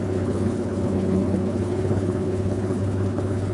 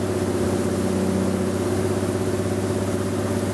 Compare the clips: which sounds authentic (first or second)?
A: second